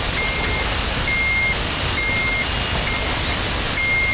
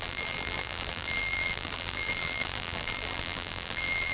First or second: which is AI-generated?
second